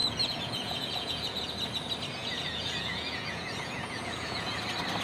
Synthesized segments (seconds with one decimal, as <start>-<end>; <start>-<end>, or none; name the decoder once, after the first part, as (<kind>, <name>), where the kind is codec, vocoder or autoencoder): 0.0-1.5 (vocoder, Vocos); 2.2-4.6